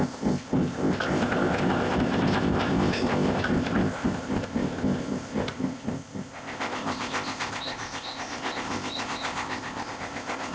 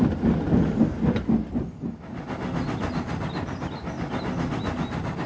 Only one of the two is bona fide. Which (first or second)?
second